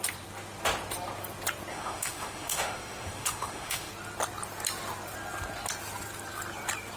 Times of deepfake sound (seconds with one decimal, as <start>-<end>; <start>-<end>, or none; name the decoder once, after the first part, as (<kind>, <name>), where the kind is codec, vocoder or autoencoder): 1.7-3.9 (autoencoder, DAC-VAE)